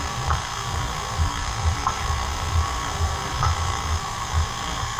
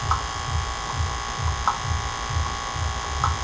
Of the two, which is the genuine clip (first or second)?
second